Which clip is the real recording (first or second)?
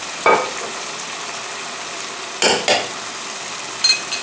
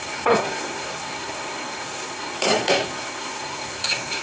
first